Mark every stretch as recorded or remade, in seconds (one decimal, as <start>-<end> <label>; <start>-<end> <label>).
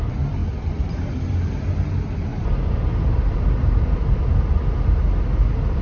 0.0-0.4 recorded; 0.4-1.5 remade; 1.5-2.3 recorded; 2.3-4.2 remade; 4.2-5.8 recorded